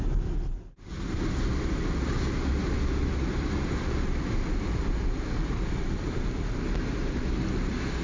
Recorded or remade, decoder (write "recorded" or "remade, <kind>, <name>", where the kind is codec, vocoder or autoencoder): recorded